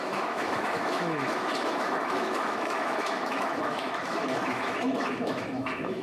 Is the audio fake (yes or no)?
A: yes